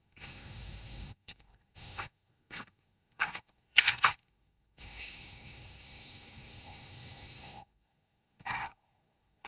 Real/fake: fake